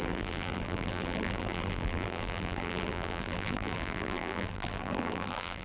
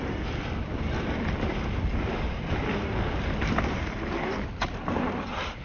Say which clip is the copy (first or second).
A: first